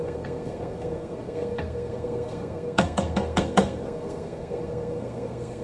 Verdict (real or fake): fake